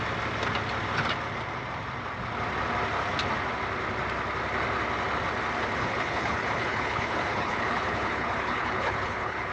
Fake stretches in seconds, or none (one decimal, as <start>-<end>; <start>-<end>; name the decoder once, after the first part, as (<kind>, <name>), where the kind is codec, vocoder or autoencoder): 5.8-9.5 (codec, HILCodec)